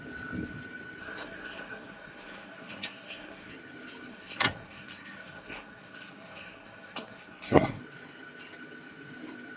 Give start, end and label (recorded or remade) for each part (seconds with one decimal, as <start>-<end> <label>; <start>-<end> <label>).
0.0-1.0 recorded; 1.0-3.5 remade; 3.5-4.1 recorded; 4.1-7.8 remade; 7.8-9.6 recorded

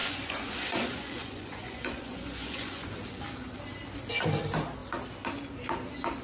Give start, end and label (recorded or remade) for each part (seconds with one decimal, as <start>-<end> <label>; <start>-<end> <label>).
0.0-2.9 remade; 2.9-6.2 recorded

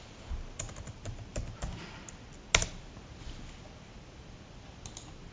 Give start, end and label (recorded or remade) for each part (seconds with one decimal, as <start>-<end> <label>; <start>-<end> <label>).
0.0-5.3 recorded

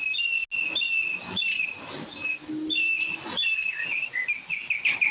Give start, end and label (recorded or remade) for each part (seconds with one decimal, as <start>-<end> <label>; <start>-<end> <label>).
0.0-5.1 recorded

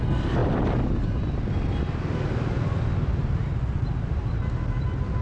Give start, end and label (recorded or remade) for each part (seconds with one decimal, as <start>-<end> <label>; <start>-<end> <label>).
0.0-5.2 recorded

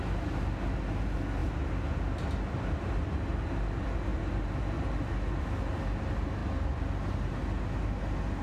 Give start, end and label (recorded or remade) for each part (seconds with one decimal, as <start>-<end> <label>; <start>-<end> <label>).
0.0-8.4 recorded

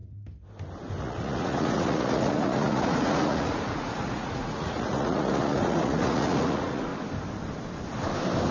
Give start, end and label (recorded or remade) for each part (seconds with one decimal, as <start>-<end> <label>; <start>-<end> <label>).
0.0-1.0 recorded; 1.0-6.9 remade; 6.9-8.5 recorded